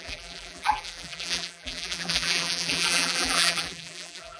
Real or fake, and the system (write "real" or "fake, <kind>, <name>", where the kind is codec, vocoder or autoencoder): fake, vocoder, BigVGAN v2